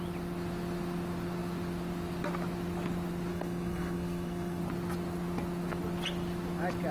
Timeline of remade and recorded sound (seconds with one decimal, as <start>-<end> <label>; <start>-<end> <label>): 0.0-3.3 recorded; 3.3-4.6 remade; 4.6-6.9 recorded

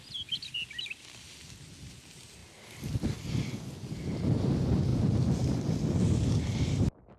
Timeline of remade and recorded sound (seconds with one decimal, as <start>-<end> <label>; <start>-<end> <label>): 0.0-7.2 recorded

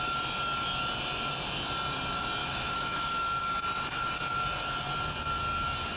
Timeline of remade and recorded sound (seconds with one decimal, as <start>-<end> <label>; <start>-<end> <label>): 0.0-2.4 recorded; 2.4-3.4 remade; 3.4-6.0 recorded

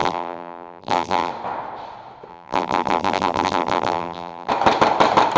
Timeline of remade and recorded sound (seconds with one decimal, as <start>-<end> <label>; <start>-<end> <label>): 0.0-1.3 remade; 1.3-2.3 recorded; 2.3-4.5 remade; 4.5-5.4 recorded

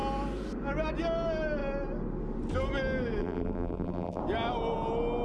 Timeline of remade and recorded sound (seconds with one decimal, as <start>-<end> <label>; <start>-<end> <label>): 0.0-3.2 recorded; 3.2-4.2 remade; 4.2-5.2 recorded

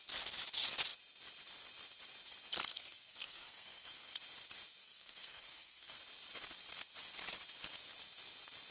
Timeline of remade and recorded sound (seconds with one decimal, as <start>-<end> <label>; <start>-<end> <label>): 0.0-2.7 recorded; 2.7-4.1 remade; 4.1-4.8 recorded; 4.8-6.0 remade; 6.0-8.7 recorded

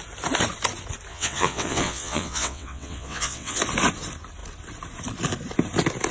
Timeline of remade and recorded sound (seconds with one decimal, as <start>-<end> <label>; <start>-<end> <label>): 0.0-1.1 recorded; 1.1-3.6 remade; 3.6-6.1 recorded

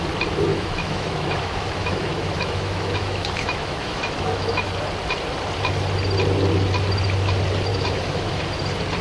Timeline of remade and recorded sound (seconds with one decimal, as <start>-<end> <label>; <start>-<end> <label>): 0.0-0.5 recorded; 0.5-4.7 remade; 4.7-7.7 recorded; 7.7-8.4 remade; 8.4-9.0 recorded